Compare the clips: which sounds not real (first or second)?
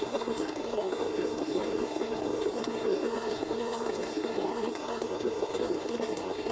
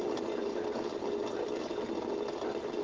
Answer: first